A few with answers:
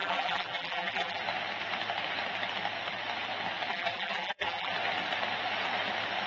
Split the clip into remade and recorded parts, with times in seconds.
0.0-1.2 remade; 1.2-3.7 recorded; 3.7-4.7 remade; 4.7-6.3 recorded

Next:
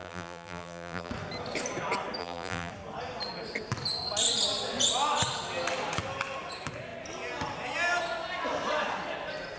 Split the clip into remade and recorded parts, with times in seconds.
0.0-1.1 remade; 1.1-2.2 recorded; 2.2-2.7 remade; 2.7-9.6 recorded

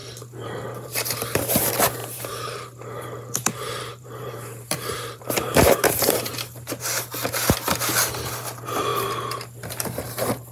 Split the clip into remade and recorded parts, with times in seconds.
0.0-1.4 remade; 1.4-2.0 recorded; 2.0-6.7 remade; 6.7-10.5 recorded

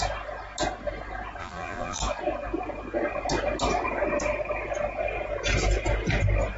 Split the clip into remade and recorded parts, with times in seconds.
0.0-1.4 recorded; 1.4-2.0 remade; 2.0-6.6 recorded

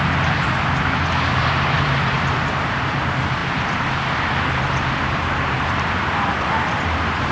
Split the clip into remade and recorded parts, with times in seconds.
0.0-7.3 remade